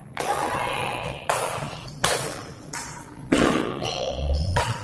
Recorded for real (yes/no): no